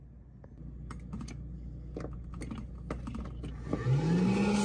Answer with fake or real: real